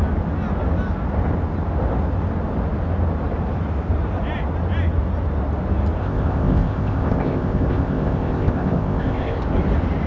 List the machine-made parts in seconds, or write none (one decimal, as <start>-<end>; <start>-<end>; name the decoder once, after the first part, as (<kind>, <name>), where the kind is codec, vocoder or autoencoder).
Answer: 6.0-9.4 (codec, ZipCodec)